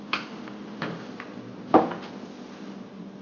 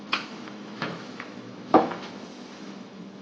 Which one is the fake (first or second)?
second